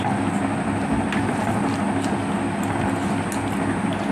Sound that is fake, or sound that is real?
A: real